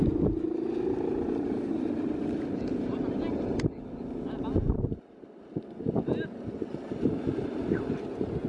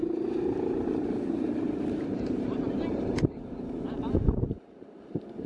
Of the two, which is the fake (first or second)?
second